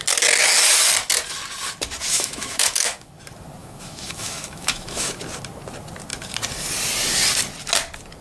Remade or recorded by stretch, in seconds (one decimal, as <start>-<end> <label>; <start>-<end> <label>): 0.0-2.1 recorded; 2.1-3.1 remade; 3.1-3.6 recorded; 3.6-5.2 remade; 5.2-8.2 recorded